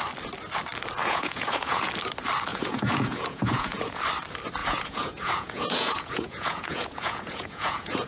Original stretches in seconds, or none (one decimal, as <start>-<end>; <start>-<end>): 0.0-1.0; 1.9-2.5; 4.0-4.6